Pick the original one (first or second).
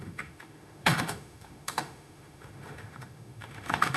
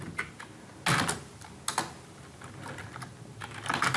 second